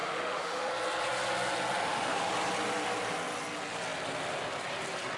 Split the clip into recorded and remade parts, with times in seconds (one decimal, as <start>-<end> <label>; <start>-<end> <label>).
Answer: 0.0-0.7 remade; 0.7-1.8 recorded; 1.8-2.3 remade; 2.3-5.2 recorded